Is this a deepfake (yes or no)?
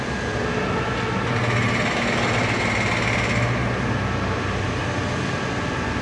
no